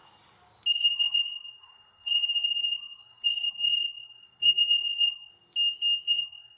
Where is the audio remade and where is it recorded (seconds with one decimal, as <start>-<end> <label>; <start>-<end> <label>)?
0.0-0.7 recorded; 0.7-5.3 remade; 5.3-6.1 recorded; 6.1-6.6 remade